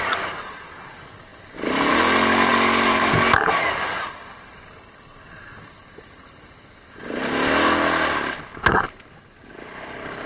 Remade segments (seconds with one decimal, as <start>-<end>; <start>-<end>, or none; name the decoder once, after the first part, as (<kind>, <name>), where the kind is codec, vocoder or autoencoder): none